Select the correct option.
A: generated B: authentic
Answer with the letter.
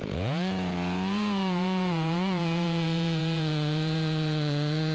A